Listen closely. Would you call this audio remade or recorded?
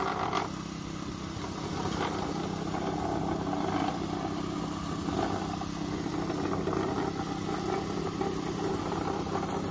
recorded